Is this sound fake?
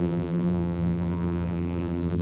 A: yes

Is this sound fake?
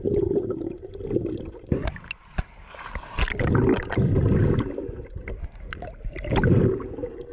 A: no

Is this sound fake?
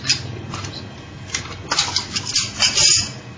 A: no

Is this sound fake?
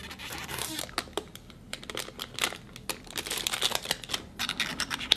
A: no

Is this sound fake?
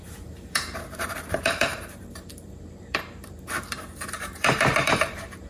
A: yes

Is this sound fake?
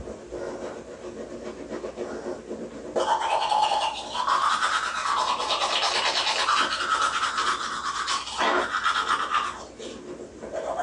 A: no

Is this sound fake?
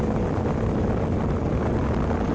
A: no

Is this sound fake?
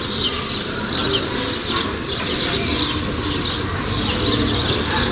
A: no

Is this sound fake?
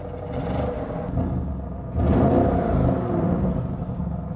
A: no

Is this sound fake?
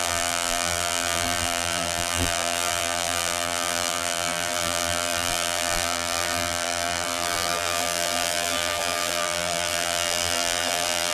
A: yes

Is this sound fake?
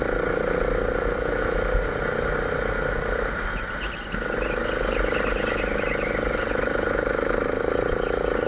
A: no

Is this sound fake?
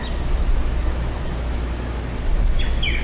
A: no